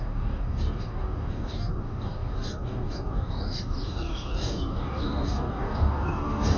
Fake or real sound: fake